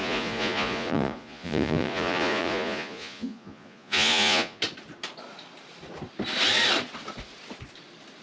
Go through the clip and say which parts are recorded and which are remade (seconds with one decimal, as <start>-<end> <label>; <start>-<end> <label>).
0.0-4.6 remade; 4.6-8.2 recorded